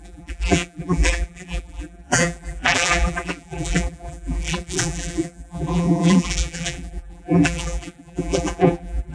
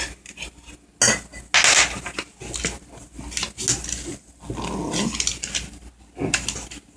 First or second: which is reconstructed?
first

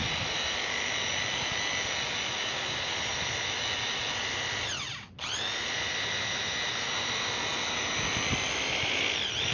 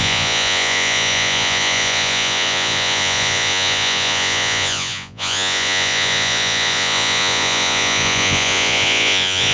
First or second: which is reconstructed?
second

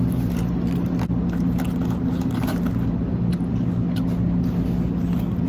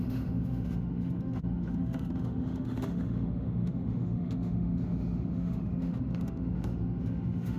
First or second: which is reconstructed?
second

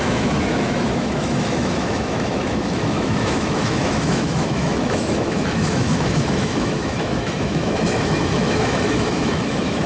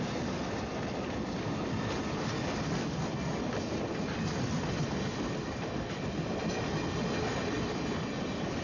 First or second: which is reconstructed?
first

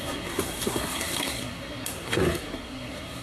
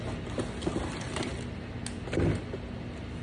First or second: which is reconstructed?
first